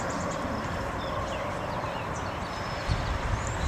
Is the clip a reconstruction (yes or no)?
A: yes